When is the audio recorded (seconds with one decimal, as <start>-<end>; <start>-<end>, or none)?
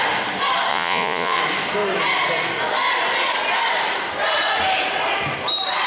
0.0-0.7; 1.4-5.9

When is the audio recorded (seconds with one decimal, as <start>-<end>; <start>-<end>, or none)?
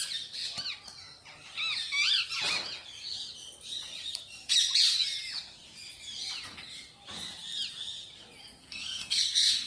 0.0-8.6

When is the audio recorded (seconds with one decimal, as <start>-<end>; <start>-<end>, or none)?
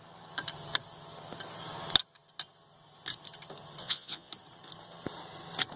0.0-3.8; 4.3-5.8